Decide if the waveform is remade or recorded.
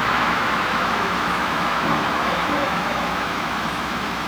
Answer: remade